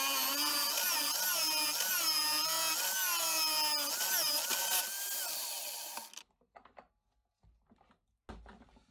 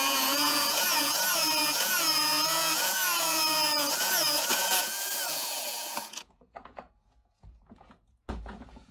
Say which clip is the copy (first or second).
second